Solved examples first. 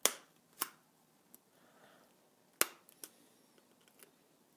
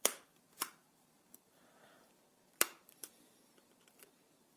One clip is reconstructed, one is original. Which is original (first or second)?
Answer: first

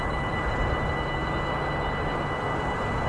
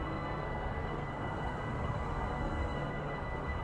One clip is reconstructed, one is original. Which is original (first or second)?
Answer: first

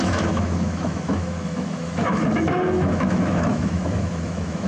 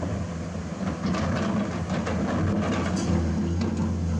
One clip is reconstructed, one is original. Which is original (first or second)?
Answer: second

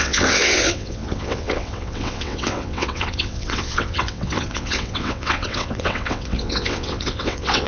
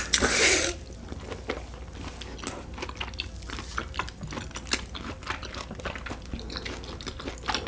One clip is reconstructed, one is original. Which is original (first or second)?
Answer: second